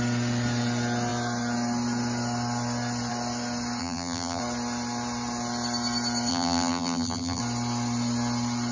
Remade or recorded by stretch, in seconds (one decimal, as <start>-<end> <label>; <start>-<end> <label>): 0.0-3.8 recorded; 3.8-4.4 remade; 4.4-6.3 recorded; 6.3-7.4 remade; 7.4-8.7 recorded